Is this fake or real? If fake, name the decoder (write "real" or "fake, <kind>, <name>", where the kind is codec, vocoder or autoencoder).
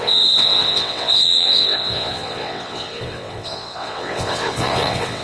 fake, vocoder, WaveNeXt